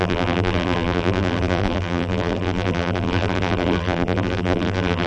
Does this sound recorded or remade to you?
remade